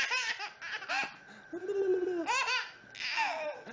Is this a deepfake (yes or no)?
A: no